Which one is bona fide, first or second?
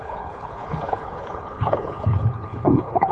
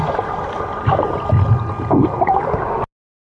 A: second